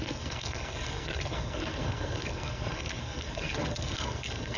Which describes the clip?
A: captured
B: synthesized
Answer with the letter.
B